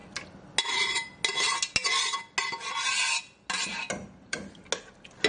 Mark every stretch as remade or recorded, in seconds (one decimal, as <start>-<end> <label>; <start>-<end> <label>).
0.0-4.0 recorded; 4.0-4.6 remade; 4.6-5.3 recorded